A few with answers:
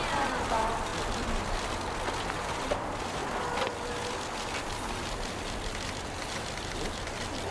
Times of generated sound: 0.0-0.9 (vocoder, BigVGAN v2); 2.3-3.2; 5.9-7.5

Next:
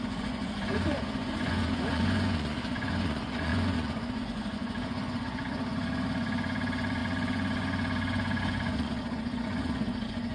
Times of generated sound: 0.0-10.3 (vocoder, Vocos)